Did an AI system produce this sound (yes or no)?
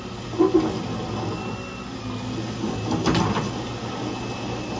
no